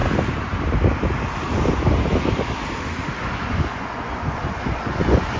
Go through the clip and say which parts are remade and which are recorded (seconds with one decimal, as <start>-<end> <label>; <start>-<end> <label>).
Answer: 0.0-3.2 recorded; 3.2-5.4 remade